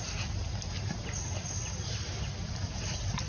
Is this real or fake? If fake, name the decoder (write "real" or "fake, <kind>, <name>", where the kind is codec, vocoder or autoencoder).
real